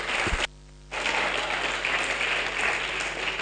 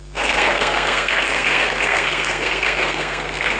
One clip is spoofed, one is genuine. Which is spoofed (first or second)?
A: second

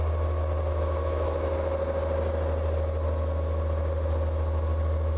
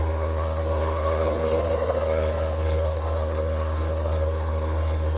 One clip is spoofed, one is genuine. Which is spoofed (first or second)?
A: second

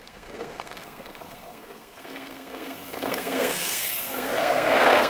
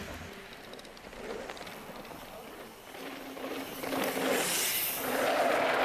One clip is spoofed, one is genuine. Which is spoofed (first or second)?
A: first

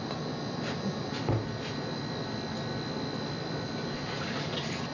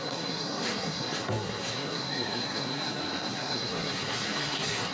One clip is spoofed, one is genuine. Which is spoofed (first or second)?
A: second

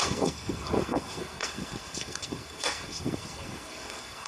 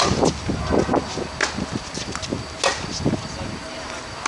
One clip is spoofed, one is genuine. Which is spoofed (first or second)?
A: first